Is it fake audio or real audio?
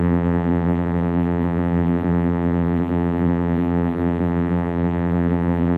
fake